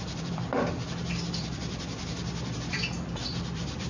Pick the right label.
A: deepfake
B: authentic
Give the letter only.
A